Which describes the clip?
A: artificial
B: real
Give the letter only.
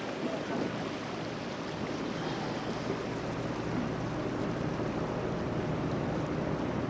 B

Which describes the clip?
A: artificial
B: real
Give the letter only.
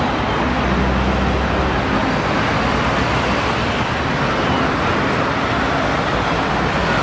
B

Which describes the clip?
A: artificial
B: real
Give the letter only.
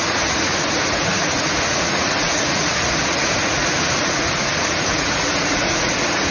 A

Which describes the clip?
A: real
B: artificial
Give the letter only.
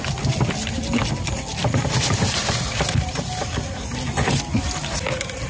A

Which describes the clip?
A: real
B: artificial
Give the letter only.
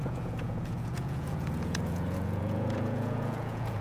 B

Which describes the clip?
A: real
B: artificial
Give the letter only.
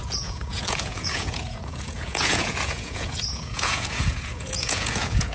B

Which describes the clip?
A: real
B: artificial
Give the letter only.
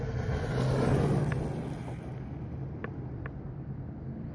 A